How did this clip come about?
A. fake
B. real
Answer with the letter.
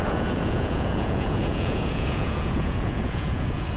A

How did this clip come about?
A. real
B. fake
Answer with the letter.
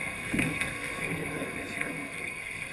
B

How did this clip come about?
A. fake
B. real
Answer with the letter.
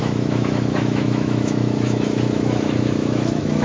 A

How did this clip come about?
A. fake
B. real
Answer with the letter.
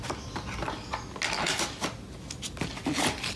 B